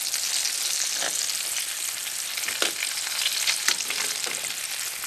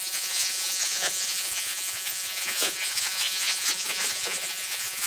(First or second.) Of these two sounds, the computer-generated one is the second